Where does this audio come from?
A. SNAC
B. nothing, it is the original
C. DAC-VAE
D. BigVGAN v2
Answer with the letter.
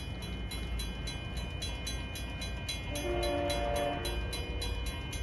B